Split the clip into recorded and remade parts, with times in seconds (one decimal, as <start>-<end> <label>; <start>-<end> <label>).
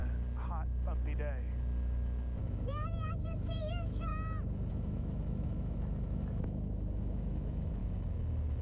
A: 0.0-3.1 recorded; 3.1-4.1 remade; 4.1-4.7 recorded; 4.7-7.8 remade; 7.8-8.6 recorded